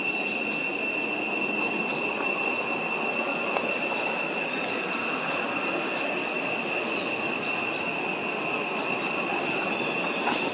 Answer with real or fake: real